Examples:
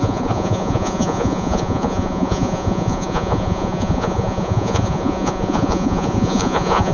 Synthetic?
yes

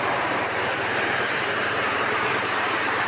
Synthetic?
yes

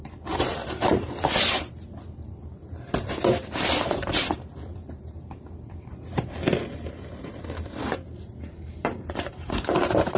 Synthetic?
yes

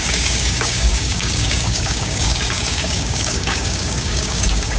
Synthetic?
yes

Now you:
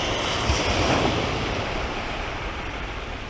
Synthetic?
yes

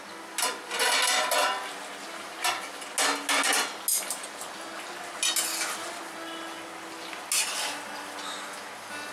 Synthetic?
no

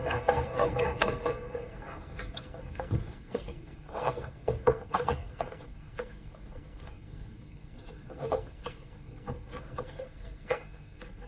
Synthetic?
yes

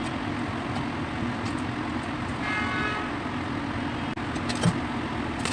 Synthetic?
no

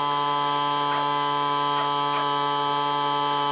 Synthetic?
no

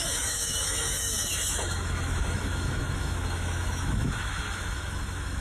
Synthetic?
yes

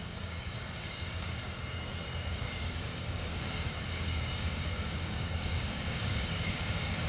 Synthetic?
yes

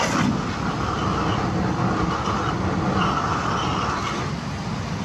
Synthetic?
no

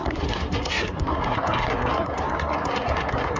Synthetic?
yes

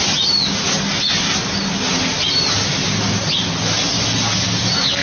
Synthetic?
no